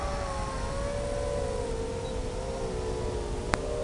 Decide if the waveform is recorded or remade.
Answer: recorded